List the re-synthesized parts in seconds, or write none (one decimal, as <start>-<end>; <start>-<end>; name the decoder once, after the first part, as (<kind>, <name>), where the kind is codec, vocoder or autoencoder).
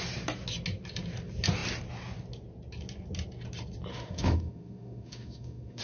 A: 3.9-5.8 (autoencoder, DAC-VAE)